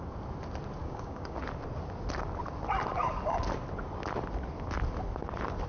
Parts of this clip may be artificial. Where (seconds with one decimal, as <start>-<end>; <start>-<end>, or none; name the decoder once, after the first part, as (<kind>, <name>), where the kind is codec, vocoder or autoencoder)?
0.8-1.4 (codec, DAC)